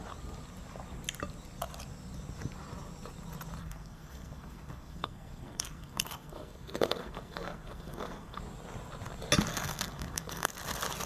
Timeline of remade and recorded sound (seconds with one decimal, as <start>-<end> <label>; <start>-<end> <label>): 0.0-3.6 recorded; 3.6-8.4 remade; 8.4-9.5 recorded; 9.5-10.5 remade; 10.5-11.1 recorded

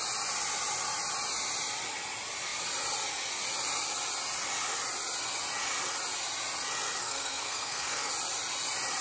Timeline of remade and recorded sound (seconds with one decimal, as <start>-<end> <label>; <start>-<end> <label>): 0.0-7.0 recorded; 7.0-8.1 remade; 8.1-9.0 recorded

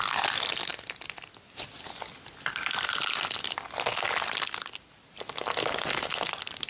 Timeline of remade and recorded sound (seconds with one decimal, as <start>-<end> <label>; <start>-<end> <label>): 0.0-6.7 recorded

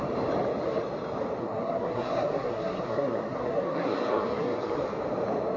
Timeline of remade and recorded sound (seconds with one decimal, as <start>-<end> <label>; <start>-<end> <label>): 0.0-1.4 recorded; 1.4-4.8 remade; 4.8-5.6 recorded

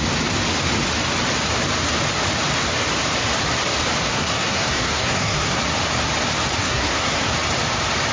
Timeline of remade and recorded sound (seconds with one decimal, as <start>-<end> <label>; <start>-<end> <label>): 0.0-4.1 recorded; 4.1-5.6 remade; 5.6-6.6 recorded; 6.6-7.3 remade; 7.3-8.1 recorded